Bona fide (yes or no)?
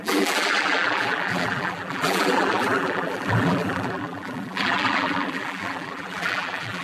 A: no